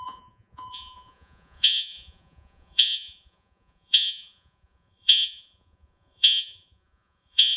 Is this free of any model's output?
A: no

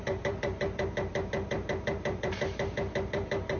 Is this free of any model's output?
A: no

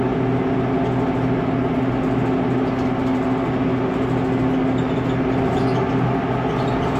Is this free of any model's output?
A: yes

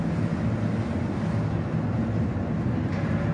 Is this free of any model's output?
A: yes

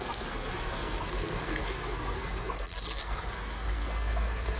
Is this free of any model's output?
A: no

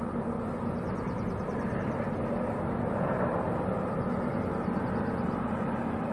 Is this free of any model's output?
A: yes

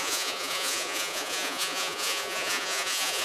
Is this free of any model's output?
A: no